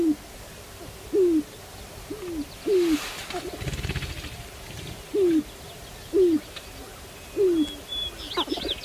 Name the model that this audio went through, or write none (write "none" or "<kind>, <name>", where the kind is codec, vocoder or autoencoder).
none